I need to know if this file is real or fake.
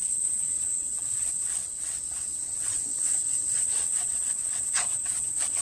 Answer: fake